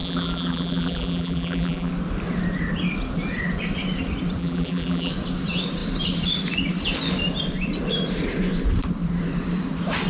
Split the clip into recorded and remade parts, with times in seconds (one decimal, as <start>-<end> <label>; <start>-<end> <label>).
0.0-1.9 remade; 1.9-4.4 recorded; 4.4-5.1 remade; 5.1-10.1 recorded